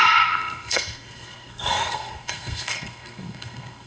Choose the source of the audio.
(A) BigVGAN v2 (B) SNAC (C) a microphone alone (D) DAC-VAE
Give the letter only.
B